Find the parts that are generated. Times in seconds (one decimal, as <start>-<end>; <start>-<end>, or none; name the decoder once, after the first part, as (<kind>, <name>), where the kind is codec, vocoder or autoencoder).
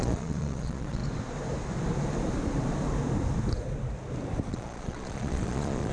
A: 0.0-1.0 (vocoder, Vocos); 4.5-5.9